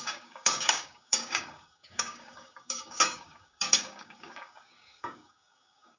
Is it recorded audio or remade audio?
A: remade